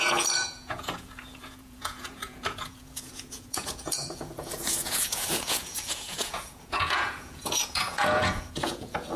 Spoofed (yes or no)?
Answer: yes